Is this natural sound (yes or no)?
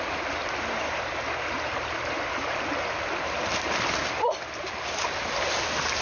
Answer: yes